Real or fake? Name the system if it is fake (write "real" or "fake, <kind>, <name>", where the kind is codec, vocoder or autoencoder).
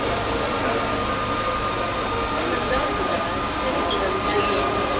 real